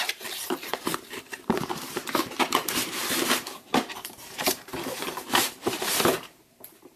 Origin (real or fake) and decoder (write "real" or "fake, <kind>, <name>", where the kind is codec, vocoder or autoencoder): fake, vocoder, BigVGAN v2